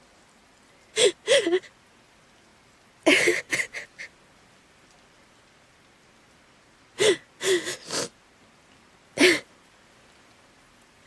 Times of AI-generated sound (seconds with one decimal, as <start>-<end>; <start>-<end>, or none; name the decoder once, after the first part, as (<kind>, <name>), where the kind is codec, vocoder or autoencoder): none